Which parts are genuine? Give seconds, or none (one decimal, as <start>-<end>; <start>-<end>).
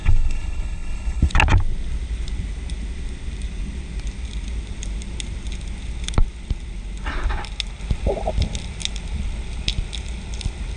1.3-10.8